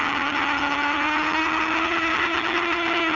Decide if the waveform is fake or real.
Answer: fake